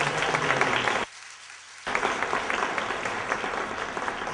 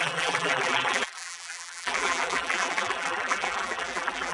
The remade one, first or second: second